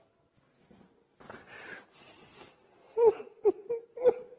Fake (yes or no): no